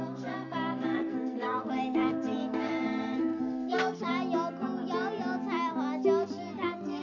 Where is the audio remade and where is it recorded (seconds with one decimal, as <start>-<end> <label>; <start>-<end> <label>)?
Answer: 0.0-4.1 remade; 4.1-6.6 recorded; 6.6-7.0 remade